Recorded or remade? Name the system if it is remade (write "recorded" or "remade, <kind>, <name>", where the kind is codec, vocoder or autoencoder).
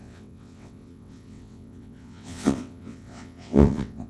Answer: remade, vocoder, WaveNeXt